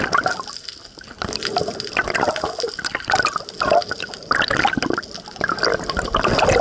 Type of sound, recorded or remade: recorded